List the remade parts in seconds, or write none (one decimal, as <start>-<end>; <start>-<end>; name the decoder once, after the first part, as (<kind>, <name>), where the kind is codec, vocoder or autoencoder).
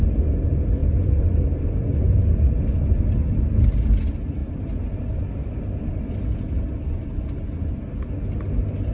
4.4-5.1 (vocoder, BigVGAN v2)